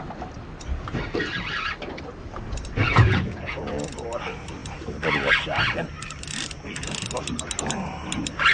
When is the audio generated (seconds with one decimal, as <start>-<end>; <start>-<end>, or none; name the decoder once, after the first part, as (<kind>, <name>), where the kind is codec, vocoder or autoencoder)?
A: 2.8-3.8 (vocoder, Vocos)